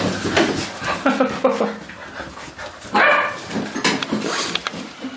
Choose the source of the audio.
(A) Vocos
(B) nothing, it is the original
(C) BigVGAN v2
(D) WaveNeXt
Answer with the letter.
B